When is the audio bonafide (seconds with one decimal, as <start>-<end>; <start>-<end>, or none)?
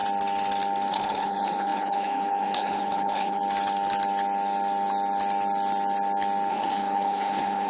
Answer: 0.0-0.9; 3.4-6.5